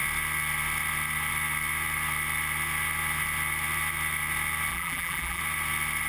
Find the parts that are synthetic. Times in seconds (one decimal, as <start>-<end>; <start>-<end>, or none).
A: 4.7-5.4